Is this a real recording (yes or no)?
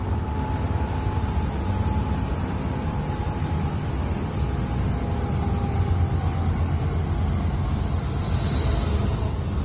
yes